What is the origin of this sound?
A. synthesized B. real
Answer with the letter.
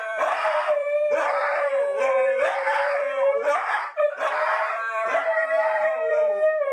A